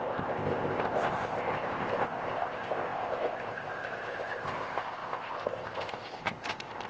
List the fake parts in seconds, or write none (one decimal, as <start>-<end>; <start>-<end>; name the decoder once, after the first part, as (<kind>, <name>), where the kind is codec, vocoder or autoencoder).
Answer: 0.0-6.9 (codec, ZipCodec)